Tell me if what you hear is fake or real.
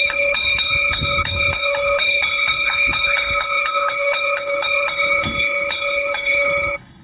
fake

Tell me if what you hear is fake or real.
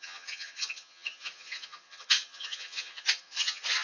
fake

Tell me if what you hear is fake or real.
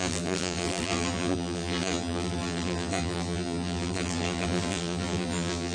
fake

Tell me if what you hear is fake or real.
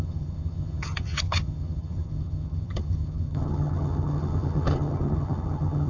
fake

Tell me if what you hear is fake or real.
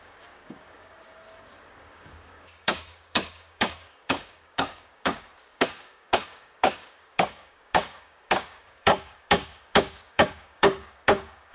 fake